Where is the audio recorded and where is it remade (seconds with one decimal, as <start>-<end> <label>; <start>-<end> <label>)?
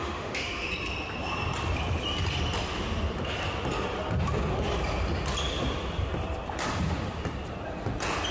0.0-0.7 remade; 0.7-8.3 recorded